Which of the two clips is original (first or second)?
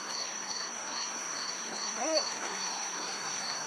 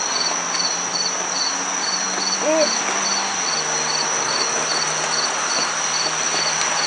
second